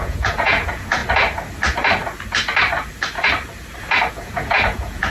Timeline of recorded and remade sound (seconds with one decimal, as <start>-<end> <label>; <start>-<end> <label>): 0.0-1.0 remade; 1.0-4.1 recorded; 4.1-5.1 remade